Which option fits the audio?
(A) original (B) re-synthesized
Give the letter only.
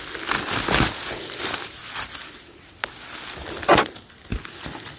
A